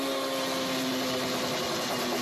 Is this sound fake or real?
real